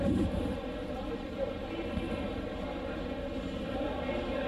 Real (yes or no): yes